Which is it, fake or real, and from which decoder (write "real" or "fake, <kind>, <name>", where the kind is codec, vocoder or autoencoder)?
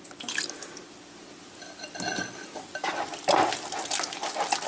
real